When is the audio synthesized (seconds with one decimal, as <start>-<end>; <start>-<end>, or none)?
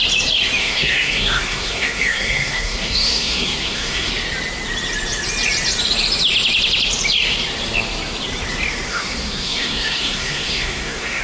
0.6-4.1; 8.9-11.2